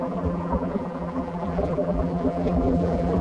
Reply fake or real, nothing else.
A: fake